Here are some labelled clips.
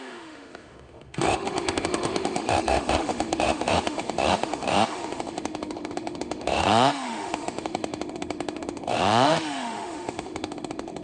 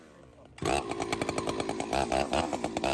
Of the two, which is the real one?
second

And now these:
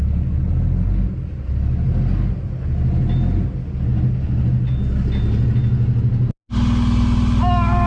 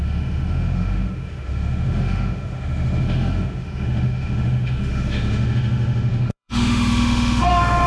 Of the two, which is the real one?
first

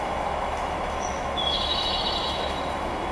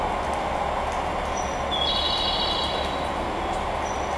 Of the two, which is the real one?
second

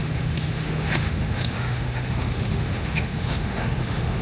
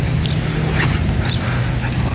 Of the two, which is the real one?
second